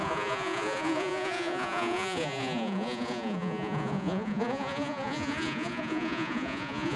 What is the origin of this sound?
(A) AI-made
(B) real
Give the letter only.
A